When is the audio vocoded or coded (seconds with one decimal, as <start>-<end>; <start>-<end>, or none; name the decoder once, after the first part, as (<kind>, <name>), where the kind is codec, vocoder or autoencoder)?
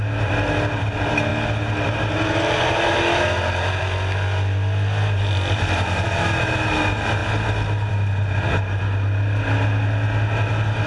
none